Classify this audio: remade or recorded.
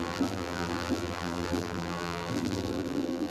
remade